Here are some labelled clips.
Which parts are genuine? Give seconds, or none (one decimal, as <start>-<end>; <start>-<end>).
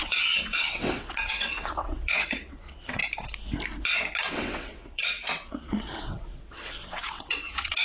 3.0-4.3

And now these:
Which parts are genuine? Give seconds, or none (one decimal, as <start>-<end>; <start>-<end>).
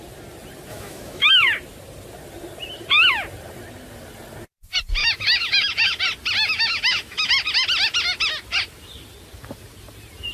0.0-0.7; 1.3-5.0; 6.0-6.4; 7.3-10.3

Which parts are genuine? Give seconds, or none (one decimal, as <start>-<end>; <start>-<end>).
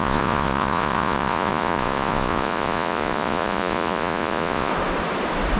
4.7-5.6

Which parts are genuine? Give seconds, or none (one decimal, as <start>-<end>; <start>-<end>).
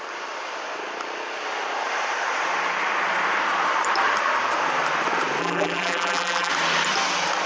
0.0-5.4; 6.5-7.5